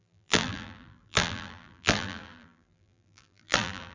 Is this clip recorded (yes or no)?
no